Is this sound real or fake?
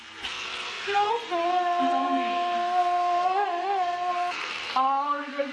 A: fake